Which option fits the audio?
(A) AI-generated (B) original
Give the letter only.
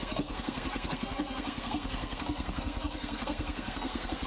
A